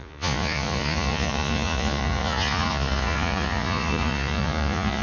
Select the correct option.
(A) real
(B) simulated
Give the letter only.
B